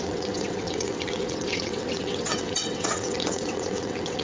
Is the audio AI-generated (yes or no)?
yes